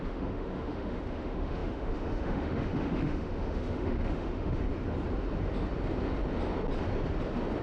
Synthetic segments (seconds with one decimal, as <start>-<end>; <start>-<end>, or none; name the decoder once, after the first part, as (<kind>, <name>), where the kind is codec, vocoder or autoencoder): 0.0-4.7 (autoencoder, DAC-VAE)